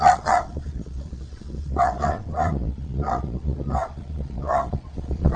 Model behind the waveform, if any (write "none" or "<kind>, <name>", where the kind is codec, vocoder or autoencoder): vocoder, Vocos